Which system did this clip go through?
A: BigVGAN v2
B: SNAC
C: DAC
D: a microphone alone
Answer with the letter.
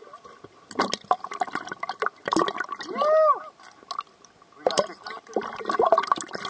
D